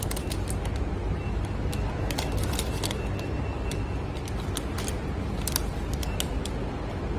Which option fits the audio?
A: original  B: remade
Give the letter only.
A